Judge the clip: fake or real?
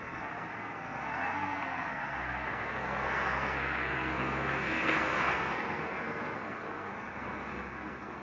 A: fake